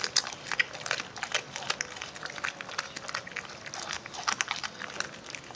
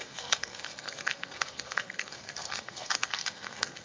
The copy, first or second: second